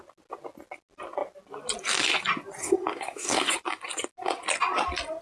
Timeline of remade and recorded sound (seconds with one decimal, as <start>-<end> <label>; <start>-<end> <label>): 0.0-2.6 recorded; 2.6-3.5 remade; 3.5-5.2 recorded